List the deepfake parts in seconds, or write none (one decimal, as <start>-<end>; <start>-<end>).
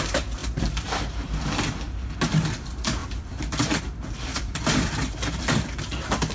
0.4-1.4; 3.0-3.8; 4.3-5.1